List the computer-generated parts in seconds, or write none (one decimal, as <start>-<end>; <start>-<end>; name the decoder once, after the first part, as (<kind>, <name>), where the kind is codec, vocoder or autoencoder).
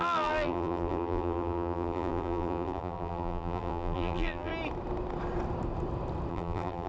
0.0-4.5 (vocoder, BigVGAN v2); 6.3-6.9